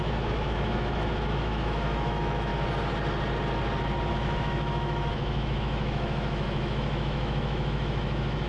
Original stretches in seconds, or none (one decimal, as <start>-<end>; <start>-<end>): 2.5-4.1